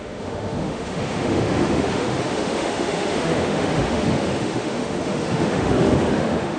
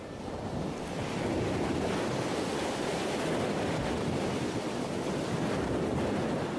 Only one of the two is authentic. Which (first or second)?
second